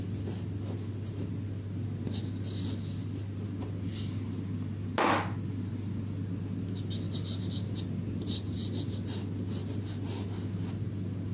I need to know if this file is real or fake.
real